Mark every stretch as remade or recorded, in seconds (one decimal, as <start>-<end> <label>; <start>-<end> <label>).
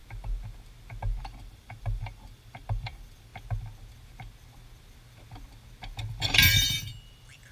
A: 0.0-1.2 recorded; 1.2-3.3 remade; 3.3-6.2 recorded; 6.2-7.5 remade